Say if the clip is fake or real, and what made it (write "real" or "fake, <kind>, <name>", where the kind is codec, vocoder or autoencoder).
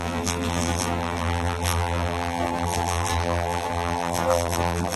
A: fake, vocoder, BigVGAN v2